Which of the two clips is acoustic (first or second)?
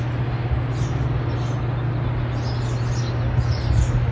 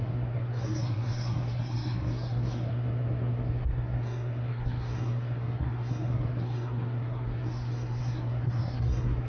first